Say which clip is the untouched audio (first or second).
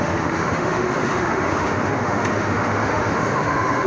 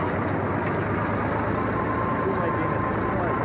second